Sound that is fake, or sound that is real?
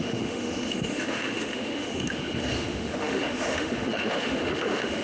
fake